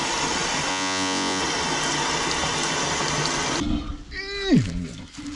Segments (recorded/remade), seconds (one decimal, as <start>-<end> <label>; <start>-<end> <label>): 0.0-0.7 recorded; 0.7-1.4 remade; 1.4-5.4 recorded